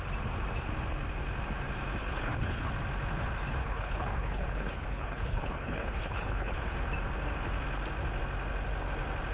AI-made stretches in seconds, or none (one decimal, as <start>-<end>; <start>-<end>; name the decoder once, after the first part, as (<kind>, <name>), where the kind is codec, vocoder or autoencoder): 2.0-2.7 (codec, HILCodec); 3.6-6.6